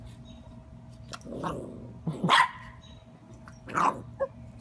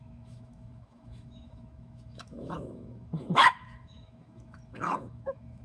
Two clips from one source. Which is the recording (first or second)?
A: first